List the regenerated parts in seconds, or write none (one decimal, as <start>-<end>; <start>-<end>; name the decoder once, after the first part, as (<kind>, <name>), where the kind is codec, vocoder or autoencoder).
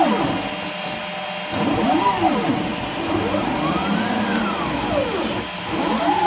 none